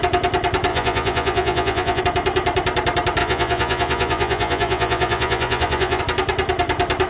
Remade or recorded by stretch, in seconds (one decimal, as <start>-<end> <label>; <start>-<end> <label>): 0.0-0.7 recorded; 0.7-2.0 remade; 2.0-3.2 recorded; 3.2-6.0 remade; 6.0-7.1 recorded